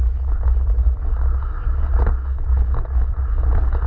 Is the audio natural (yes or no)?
yes